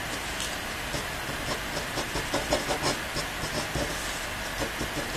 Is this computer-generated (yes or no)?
no